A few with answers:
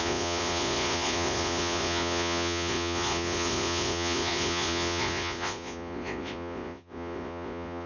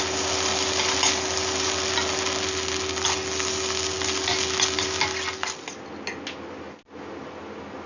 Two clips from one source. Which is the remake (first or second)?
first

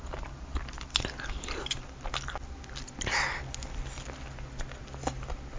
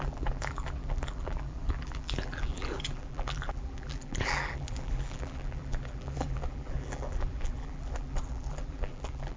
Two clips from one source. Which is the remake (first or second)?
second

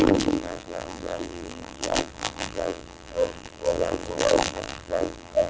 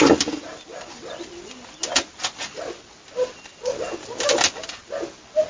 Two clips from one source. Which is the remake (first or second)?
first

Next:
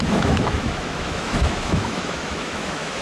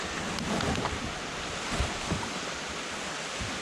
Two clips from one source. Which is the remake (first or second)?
first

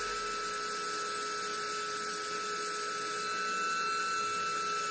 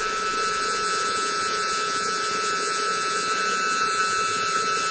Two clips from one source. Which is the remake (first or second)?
second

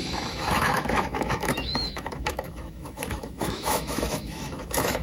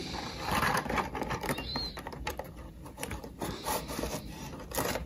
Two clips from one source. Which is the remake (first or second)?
first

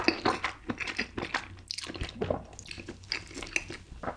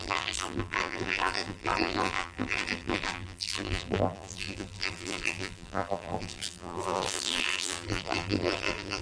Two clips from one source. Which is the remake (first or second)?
second